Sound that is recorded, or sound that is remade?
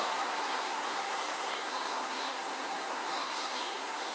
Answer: remade